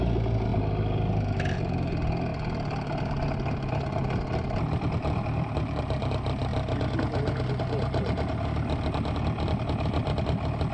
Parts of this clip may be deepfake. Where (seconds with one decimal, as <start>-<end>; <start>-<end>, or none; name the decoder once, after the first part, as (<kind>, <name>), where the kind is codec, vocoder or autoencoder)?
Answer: none